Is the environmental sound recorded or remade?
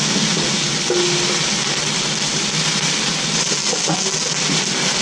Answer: recorded